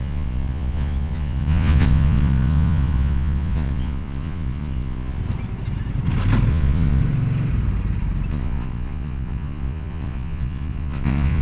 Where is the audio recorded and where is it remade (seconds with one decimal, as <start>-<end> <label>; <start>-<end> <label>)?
0.0-5.2 remade; 5.2-6.5 recorded; 6.5-7.0 remade; 7.0-8.3 recorded; 8.3-11.4 remade